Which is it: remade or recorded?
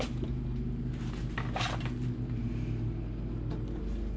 recorded